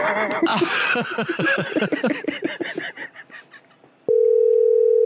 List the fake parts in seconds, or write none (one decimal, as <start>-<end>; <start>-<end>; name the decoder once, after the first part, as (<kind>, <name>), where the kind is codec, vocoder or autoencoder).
none